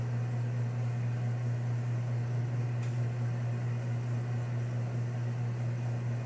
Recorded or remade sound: recorded